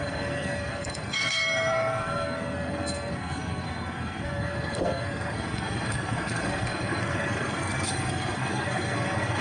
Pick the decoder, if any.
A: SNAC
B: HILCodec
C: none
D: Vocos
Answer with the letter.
A